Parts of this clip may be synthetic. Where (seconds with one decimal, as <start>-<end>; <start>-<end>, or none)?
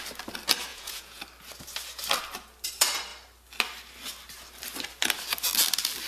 0.7-1.2